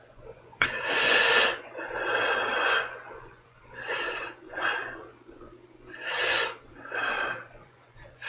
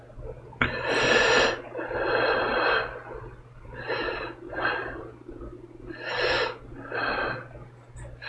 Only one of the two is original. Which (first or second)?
second